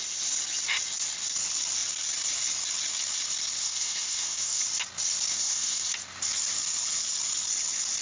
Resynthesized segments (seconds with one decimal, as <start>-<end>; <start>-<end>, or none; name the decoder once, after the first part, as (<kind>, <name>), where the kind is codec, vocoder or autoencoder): 3.6-4.6 (codec, SNAC); 5.3-5.9